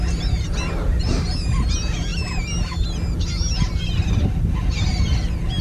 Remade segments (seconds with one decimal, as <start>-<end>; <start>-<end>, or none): 0.9-1.6